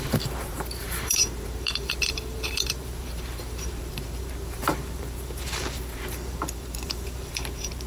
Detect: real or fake fake